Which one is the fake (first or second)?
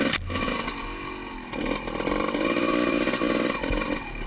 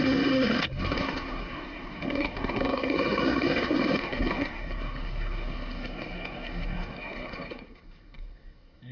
second